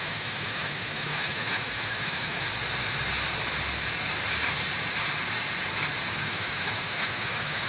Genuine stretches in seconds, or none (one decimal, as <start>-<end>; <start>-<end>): 2.4-6.1